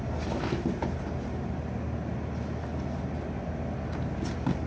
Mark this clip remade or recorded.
recorded